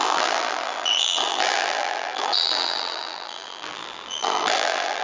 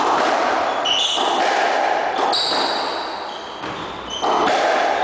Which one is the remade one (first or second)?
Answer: first